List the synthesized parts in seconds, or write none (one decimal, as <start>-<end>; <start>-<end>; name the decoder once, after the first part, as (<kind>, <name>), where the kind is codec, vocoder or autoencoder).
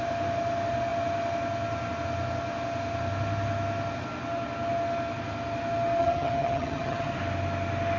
6.0-7.1 (vocoder, HiFi-GAN)